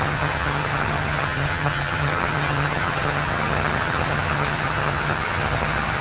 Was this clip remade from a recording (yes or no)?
yes